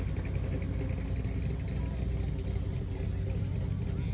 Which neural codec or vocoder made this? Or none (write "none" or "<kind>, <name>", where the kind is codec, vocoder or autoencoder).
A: none